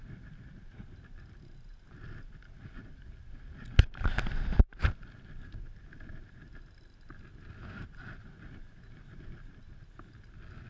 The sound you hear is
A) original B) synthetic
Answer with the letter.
A